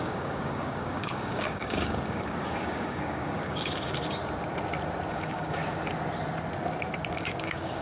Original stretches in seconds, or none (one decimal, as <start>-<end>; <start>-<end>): 4.2-5.1; 5.6-7.1